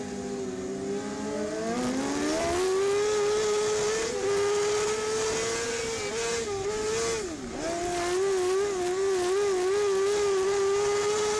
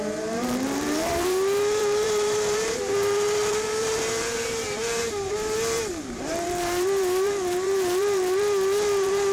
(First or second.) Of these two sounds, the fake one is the second